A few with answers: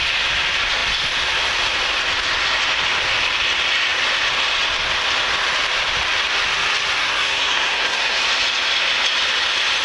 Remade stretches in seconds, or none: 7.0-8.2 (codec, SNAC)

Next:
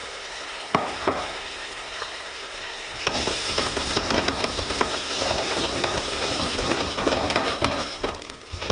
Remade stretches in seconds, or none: 0.0-8.7 (codec, SNAC)

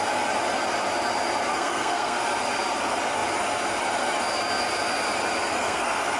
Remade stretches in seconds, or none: 1.5-2.2 (codec, SNAC); 5.6-6.2

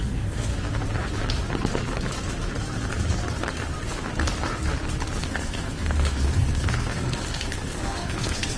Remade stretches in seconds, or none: 0.0-0.5 (codec, SNAC); 5.2-8.6

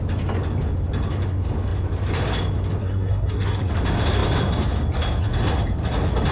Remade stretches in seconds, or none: 2.8-3.7 (codec, SNAC)

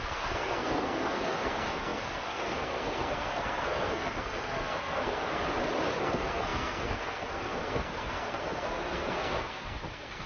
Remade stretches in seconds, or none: 0.0-5.4 (codec, SNAC); 6.0-10.3

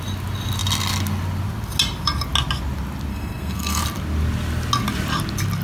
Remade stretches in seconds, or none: 3.1-3.8 (codec, SNAC)